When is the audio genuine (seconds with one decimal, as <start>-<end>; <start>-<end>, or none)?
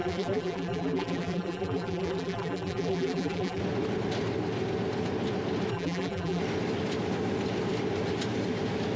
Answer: 3.6-5.7; 6.4-9.0